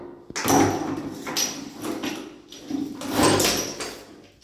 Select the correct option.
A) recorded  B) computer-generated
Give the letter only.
A